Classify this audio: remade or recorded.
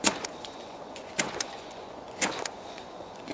remade